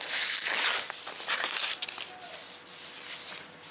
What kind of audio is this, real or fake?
real